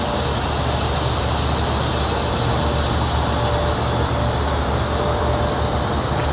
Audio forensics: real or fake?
real